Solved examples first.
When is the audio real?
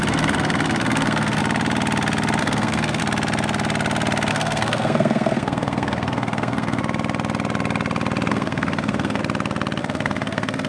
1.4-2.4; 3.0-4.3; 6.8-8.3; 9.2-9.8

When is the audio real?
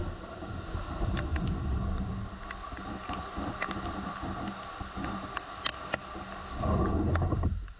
0.0-7.8